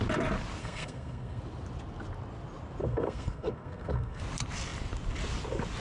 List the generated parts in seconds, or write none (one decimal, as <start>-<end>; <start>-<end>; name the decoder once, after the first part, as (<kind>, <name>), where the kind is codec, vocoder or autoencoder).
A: 0.6-1.4 (codec, SNAC); 2.8-4.2